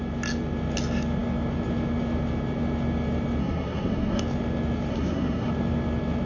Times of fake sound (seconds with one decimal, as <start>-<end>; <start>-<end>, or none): 3.4-4.2; 4.9-5.5